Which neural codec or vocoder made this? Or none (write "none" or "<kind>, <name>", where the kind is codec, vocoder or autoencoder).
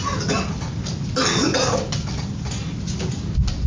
none